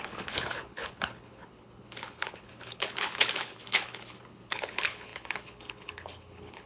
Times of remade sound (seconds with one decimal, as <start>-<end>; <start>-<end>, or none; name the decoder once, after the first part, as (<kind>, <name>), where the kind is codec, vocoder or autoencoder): 0.0-6.7 (codec, HILCodec)